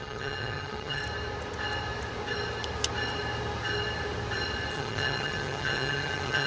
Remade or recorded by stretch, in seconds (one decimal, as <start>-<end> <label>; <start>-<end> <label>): 0.0-1.0 remade; 1.0-4.7 recorded; 4.7-6.5 remade